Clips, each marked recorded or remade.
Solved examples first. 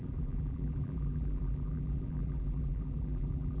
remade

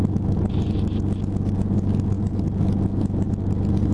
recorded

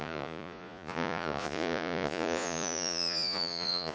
remade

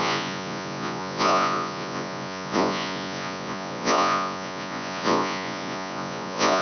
remade